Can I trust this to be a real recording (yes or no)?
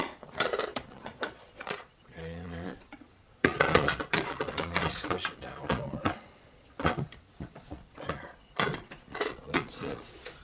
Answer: no